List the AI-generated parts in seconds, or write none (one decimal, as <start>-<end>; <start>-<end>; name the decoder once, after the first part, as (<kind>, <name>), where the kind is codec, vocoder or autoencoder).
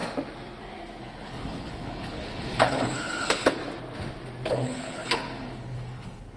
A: 1.0-3.6 (codec, HILCodec); 4.5-6.4